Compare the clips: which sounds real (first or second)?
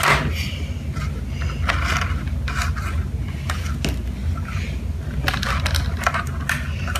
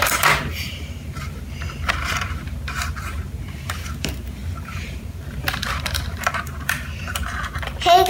first